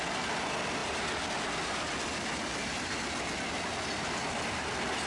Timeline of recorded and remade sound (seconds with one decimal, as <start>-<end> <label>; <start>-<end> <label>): 0.0-5.1 recorded